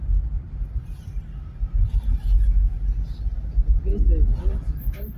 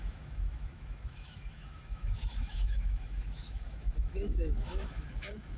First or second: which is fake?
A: second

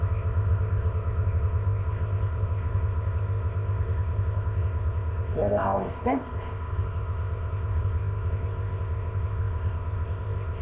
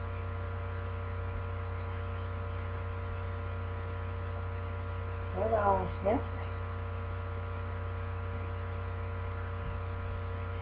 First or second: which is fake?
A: first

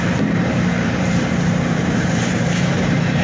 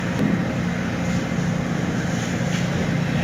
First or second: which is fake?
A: first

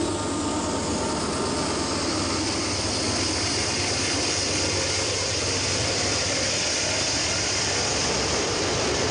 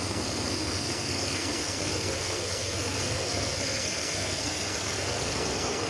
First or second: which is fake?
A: second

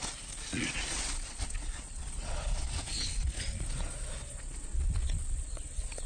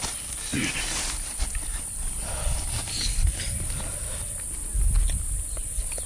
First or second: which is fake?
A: first